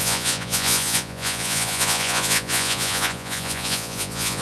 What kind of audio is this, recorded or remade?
remade